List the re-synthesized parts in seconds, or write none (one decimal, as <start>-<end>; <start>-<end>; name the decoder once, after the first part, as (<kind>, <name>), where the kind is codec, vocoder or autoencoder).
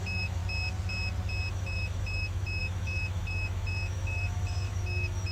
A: 0.0-0.4 (autoencoder, DAC-VAE); 1.5-5.3